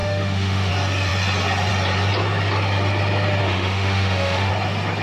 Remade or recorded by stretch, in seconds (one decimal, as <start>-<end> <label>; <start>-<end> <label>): 0.0-0.7 remade; 0.7-3.4 recorded; 3.4-4.5 remade; 4.5-5.0 recorded